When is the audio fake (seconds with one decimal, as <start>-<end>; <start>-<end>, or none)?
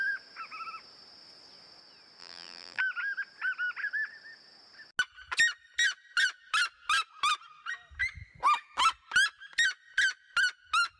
2.2-2.8